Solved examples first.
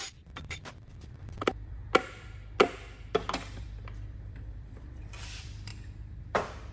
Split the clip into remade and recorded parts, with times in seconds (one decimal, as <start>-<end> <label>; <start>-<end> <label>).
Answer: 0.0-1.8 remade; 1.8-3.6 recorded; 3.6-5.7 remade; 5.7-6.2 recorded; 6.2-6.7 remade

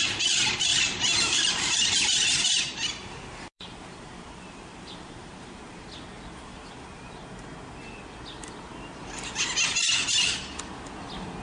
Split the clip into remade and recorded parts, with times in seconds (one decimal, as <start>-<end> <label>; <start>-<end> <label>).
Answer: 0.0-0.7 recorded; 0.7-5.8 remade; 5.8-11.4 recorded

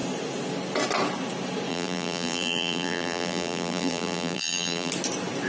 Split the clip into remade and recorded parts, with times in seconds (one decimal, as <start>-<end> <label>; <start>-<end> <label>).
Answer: 0.0-1.7 recorded; 1.7-4.9 remade; 4.9-5.5 recorded

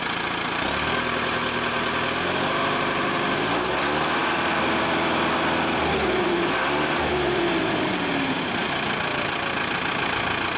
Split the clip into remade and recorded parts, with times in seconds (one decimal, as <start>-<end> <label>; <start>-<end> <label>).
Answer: 0.0-4.2 recorded; 4.2-7.4 remade; 7.4-10.6 recorded

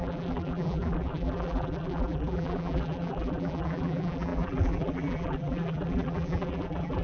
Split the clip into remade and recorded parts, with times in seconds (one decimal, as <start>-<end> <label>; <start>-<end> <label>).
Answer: 0.0-7.0 remade

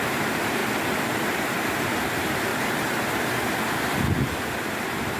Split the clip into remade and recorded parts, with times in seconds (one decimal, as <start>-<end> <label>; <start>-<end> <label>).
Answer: 0.0-0.6 remade; 0.6-1.7 recorded; 1.7-2.5 remade; 2.5-4.7 recorded; 4.7-5.2 remade